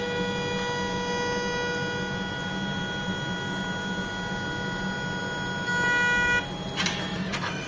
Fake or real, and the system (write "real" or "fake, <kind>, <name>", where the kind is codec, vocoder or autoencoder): real